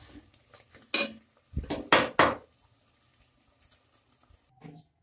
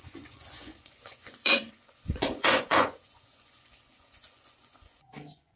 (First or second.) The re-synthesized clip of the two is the second